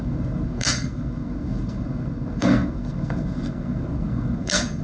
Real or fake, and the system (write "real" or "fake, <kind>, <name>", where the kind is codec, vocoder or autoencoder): fake, codec, SNAC